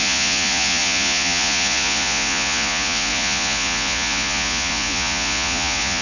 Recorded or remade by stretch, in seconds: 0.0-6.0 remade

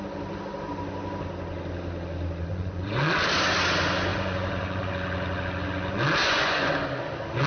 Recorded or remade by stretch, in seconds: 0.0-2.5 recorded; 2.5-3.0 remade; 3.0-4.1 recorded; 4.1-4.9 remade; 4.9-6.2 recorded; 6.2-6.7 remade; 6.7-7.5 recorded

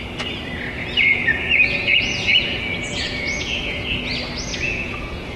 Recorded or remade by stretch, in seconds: 0.0-0.8 recorded; 0.8-4.0 remade; 4.0-4.5 recorded; 4.5-5.4 remade

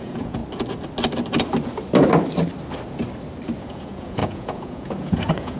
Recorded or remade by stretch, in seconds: 0.0-0.4 remade; 0.4-3.6 recorded; 3.6-5.6 remade

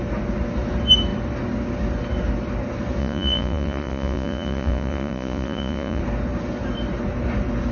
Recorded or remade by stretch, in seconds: 0.0-3.0 recorded; 3.0-6.0 remade; 6.0-7.7 recorded

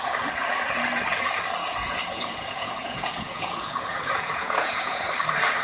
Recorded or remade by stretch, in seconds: 0.0-1.6 recorded; 1.6-5.0 remade; 5.0-5.6 recorded

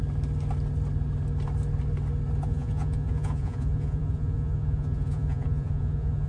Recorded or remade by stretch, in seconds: 0.0-2.4 recorded; 2.4-6.3 remade